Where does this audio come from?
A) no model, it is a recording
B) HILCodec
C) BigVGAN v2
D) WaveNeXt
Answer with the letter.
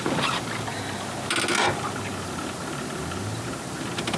A